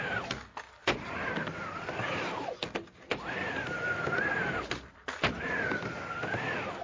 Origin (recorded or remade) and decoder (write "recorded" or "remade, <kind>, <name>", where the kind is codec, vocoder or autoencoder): recorded